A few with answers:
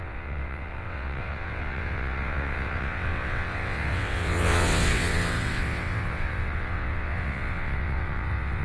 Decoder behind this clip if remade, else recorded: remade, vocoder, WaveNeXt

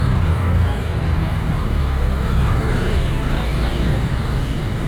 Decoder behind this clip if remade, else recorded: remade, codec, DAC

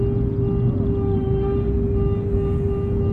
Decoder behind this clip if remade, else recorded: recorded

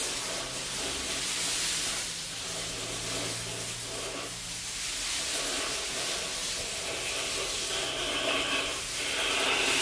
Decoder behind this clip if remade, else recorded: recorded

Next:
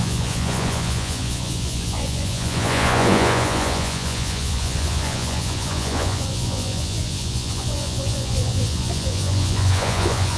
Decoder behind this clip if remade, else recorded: remade, vocoder, Vocos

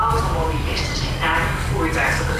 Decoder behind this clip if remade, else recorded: remade, codec, DAC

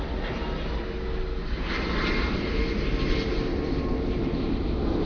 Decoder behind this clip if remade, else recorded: recorded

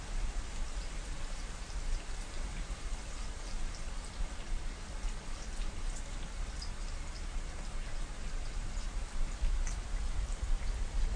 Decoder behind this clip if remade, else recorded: remade, vocoder, BigVGAN v2